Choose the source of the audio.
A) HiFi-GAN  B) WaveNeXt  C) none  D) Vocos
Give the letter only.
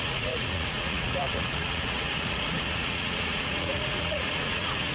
D